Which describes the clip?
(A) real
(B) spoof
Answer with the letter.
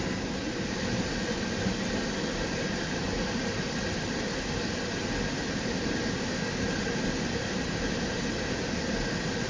A